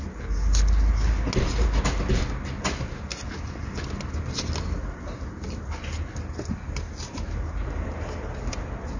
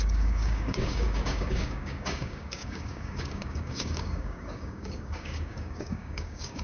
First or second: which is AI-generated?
second